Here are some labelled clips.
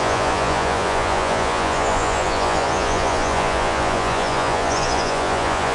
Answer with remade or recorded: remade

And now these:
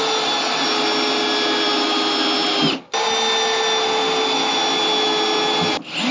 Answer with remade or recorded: recorded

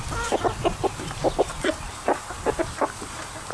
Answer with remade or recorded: recorded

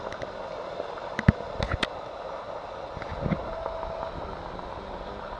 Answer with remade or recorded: recorded